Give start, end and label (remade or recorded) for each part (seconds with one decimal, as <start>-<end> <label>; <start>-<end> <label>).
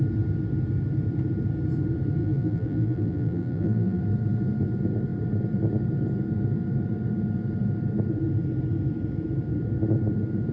0.0-2.2 recorded; 2.2-4.0 remade; 4.0-10.5 recorded